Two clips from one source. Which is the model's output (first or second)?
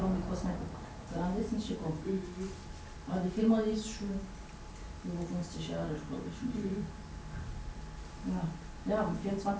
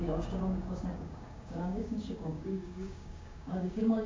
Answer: second